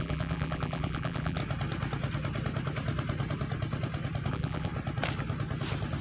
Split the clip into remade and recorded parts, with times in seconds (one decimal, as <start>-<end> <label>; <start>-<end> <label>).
0.0-1.4 remade; 1.4-4.3 recorded; 4.3-4.7 remade; 4.7-6.0 recorded